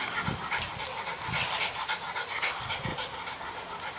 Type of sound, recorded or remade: recorded